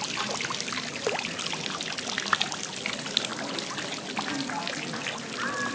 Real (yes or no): yes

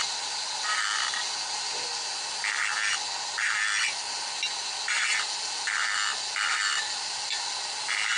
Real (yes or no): yes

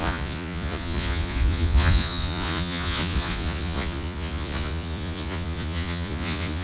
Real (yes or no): no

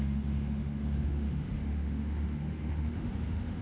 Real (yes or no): no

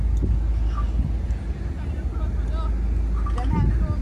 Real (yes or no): yes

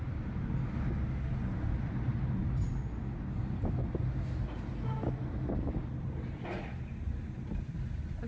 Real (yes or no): yes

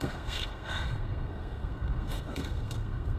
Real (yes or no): no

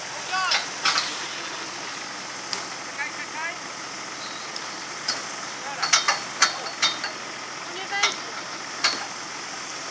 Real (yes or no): yes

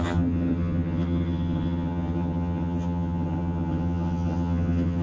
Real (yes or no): no